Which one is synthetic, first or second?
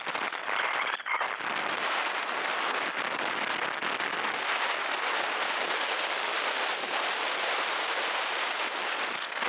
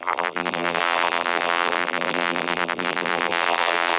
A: second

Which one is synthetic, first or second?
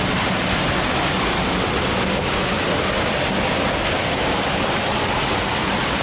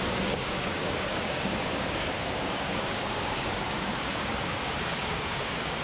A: second